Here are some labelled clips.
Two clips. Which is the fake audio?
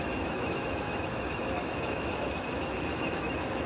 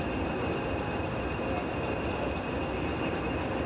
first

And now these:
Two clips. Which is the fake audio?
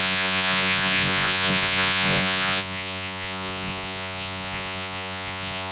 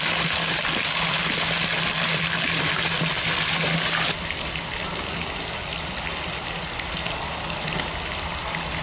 first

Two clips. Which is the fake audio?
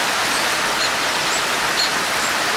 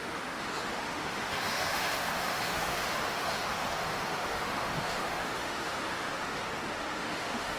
second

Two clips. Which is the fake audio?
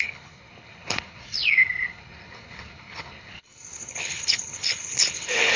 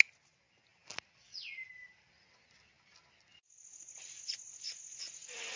first